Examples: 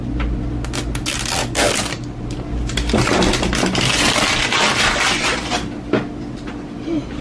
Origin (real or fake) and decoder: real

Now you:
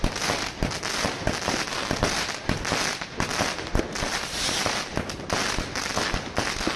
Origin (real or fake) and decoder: real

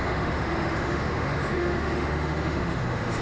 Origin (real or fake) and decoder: fake, autoencoder, DAC-VAE